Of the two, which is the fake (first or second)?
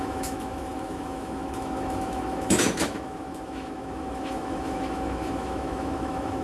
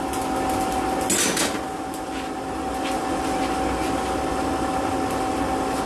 first